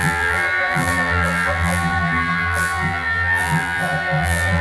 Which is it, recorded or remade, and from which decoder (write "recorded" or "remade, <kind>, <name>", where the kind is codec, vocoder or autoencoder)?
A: remade, vocoder, BigVGAN v2